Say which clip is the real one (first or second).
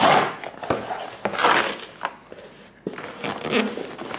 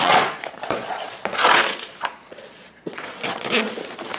first